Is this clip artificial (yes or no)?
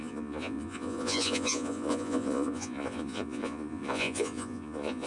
yes